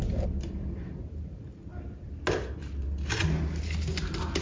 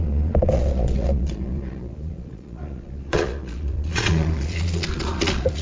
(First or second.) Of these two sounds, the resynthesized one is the second